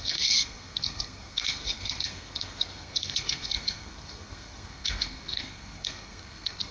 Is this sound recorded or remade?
remade